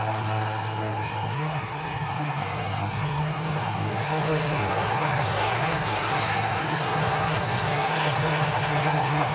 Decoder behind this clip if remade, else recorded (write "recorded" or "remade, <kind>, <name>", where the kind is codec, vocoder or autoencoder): remade, codec, SNAC